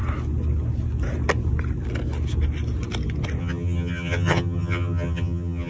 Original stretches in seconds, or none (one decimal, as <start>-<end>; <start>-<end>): 0.0-3.4